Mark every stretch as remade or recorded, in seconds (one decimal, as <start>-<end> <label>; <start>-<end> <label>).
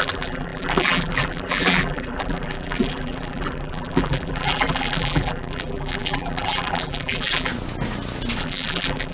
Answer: 0.0-7.5 remade; 7.5-8.4 recorded; 8.4-9.1 remade